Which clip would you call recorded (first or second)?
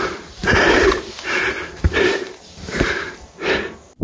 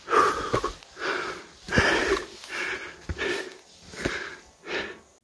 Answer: second